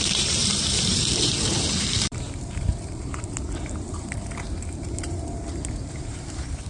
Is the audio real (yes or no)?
no